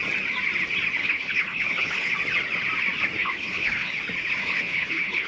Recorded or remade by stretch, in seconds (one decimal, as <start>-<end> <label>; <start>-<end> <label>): 0.0-1.0 recorded; 1.0-2.1 remade; 2.1-3.2 recorded; 3.2-3.9 remade; 3.9-4.4 recorded; 4.4-5.3 remade